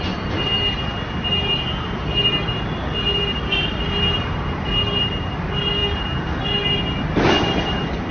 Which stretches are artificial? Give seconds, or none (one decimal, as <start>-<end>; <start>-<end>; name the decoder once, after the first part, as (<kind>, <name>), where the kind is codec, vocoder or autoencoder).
none